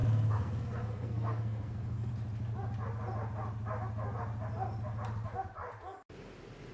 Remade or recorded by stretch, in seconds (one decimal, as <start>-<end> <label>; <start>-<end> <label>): 0.0-2.1 remade; 2.1-6.7 recorded